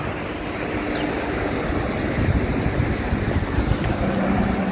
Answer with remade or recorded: recorded